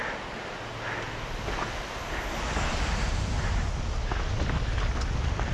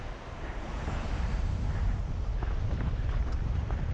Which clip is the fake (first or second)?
second